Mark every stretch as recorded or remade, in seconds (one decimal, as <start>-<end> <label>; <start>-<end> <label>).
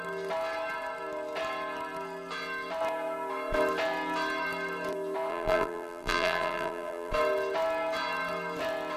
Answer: 0.0-5.3 recorded; 5.3-7.1 remade; 7.1-9.0 recorded